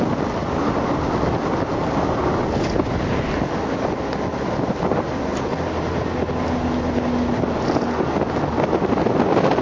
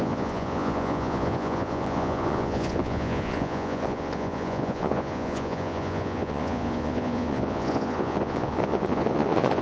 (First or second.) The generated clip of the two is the second